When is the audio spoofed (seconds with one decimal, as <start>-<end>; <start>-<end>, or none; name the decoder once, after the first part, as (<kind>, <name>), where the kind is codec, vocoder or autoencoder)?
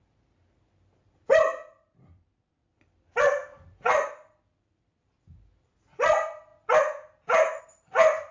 none